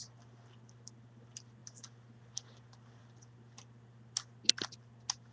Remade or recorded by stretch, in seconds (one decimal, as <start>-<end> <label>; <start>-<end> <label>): 0.0-5.3 recorded